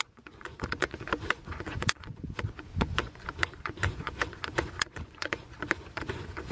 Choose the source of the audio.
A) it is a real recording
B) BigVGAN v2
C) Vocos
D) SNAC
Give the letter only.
C